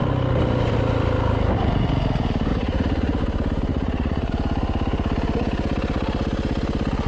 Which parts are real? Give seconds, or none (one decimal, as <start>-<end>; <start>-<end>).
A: 0.0-2.5; 3.2-3.7; 4.3-7.1